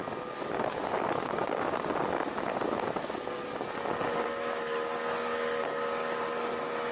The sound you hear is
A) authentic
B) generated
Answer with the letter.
A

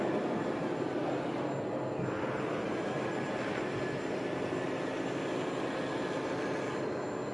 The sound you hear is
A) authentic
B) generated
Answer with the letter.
A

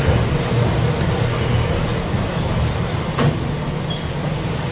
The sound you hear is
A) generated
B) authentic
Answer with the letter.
B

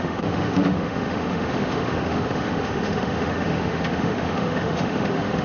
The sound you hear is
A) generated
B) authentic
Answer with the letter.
A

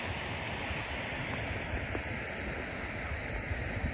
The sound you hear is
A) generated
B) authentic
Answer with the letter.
B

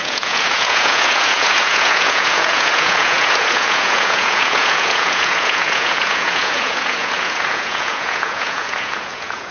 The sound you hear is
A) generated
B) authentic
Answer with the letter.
A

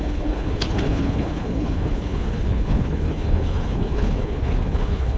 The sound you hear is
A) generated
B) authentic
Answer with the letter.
A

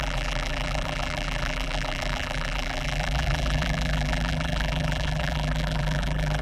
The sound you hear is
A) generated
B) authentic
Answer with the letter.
A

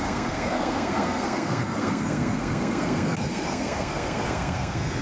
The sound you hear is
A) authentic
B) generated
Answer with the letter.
B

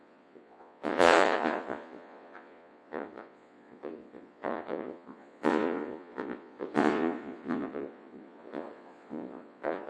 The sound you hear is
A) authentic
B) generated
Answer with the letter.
B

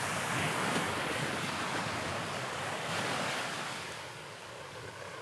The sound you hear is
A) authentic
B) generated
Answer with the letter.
B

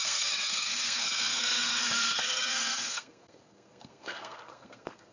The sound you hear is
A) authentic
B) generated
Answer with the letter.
B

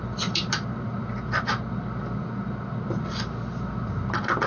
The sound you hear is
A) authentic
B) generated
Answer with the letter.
A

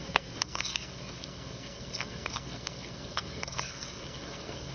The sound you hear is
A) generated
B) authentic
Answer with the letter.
A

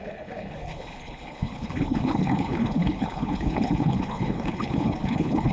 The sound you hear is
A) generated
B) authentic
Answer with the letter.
A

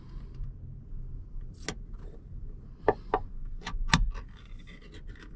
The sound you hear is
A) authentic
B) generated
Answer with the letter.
A